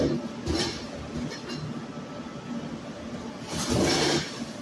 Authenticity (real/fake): real